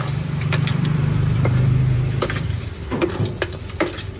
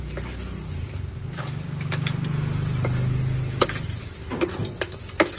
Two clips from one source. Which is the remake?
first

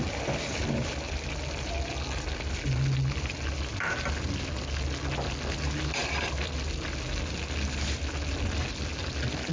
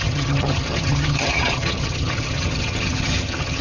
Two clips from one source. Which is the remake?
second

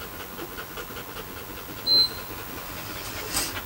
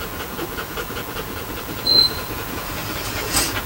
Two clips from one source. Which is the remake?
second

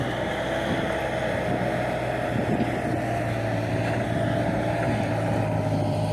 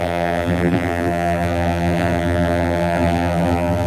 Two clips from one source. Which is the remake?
second